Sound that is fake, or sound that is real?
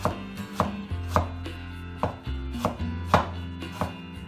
real